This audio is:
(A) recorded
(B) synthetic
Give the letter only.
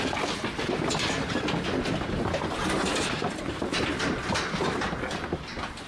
A